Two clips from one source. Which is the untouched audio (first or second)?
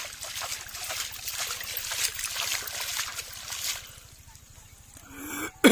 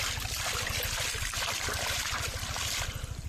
first